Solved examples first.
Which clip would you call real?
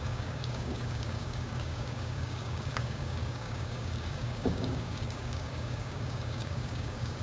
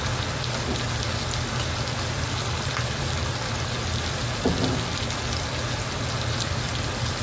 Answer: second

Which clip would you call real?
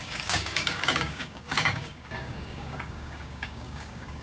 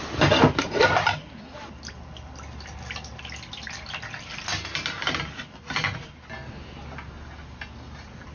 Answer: second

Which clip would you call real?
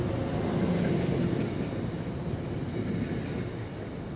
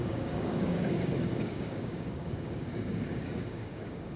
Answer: first